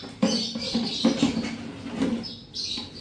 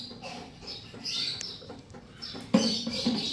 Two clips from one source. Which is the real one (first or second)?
first